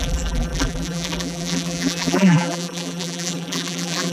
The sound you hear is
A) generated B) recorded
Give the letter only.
A